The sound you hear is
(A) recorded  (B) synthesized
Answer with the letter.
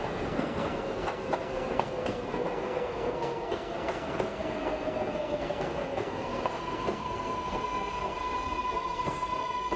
B